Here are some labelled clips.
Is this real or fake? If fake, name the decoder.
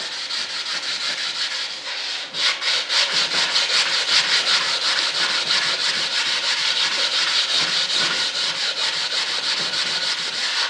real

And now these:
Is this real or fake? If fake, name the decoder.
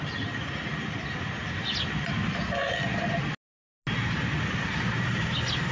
real